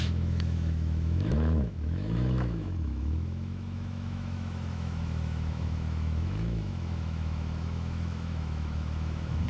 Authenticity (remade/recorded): remade